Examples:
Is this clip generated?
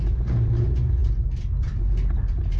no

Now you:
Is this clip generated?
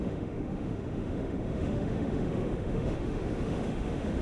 yes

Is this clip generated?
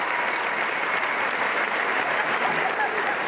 no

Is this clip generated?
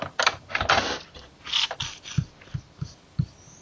no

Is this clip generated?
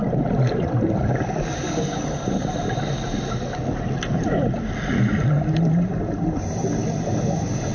no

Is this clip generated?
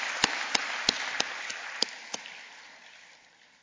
no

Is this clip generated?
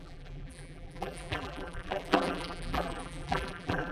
yes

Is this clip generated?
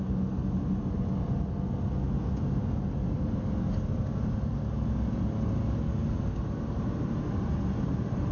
no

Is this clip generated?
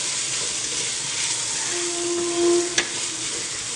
no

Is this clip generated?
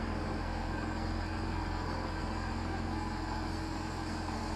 yes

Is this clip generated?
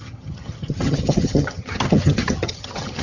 yes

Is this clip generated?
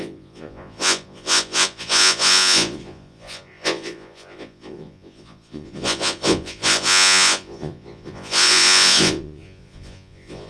yes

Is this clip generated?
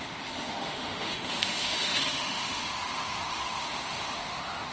yes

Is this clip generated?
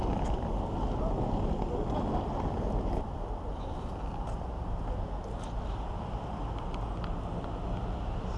no